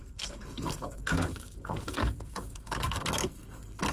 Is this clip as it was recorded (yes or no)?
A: no